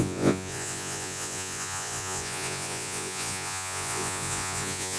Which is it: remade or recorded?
remade